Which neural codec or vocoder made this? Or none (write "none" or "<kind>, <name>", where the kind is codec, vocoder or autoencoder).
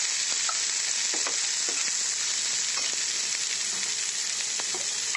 none